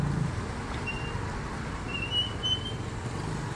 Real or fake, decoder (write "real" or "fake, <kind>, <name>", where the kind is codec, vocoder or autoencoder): real